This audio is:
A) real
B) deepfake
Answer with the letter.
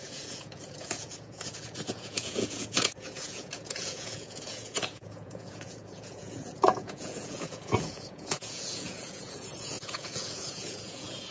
B